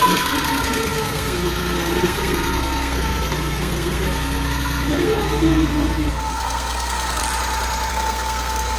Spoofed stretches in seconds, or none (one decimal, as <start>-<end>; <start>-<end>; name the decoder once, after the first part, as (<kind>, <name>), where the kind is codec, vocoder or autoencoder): 0.0-7.2 (codec, SNAC); 7.9-8.8